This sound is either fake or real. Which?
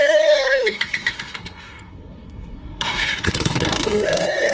fake